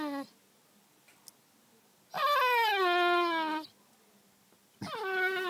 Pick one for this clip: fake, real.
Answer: real